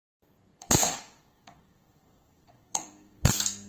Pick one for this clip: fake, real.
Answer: fake